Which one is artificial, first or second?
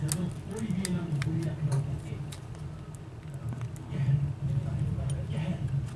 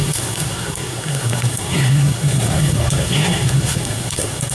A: second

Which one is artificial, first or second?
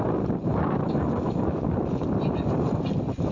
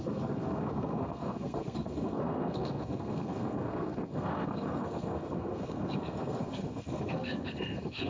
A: second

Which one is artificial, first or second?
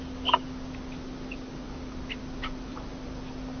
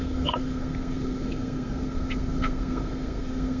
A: second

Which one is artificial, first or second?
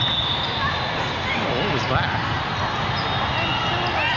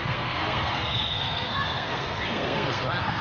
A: second